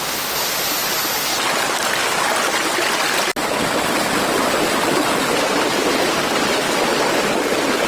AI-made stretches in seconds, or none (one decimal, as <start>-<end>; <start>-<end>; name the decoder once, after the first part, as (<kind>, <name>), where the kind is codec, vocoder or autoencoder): none